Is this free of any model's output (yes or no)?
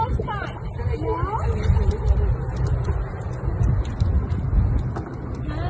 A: yes